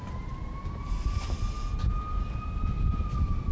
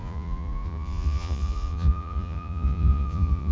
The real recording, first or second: first